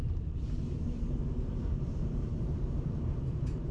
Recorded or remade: remade